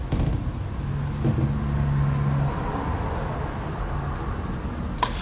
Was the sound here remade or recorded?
recorded